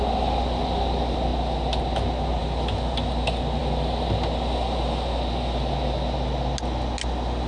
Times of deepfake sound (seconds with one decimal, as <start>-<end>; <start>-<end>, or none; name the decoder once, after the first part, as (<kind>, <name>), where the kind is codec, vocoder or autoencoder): none